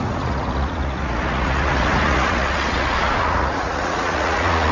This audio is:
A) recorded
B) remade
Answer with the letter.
B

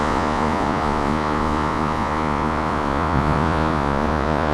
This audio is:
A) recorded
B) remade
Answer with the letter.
B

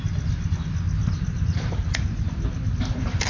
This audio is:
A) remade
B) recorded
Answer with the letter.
B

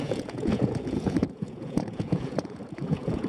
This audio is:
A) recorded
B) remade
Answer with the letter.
B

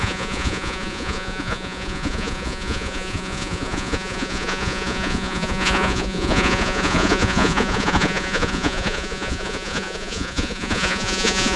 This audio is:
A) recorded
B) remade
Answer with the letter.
B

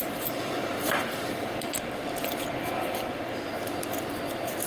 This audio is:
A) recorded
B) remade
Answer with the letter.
A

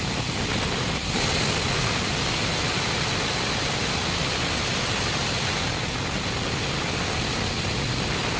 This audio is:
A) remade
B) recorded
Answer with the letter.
B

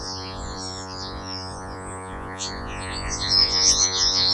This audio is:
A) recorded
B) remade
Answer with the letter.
B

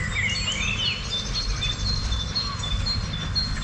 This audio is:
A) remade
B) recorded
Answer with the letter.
B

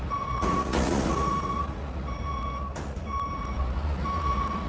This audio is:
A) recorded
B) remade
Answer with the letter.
B